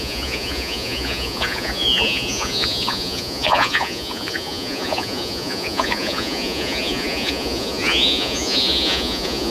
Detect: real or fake fake